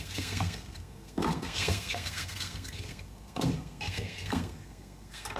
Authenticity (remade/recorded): remade